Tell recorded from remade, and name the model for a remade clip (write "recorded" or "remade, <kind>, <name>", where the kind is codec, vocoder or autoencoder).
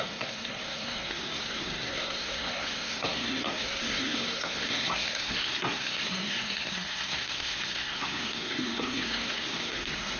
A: remade, codec, SNAC